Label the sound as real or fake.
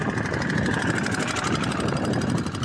real